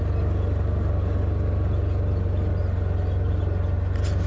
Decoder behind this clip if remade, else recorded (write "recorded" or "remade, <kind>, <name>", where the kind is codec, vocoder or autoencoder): recorded